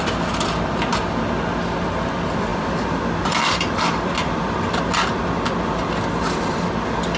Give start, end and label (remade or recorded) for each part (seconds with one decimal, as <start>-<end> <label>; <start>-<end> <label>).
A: 0.0-2.5 recorded; 2.5-4.8 remade; 4.8-7.2 recorded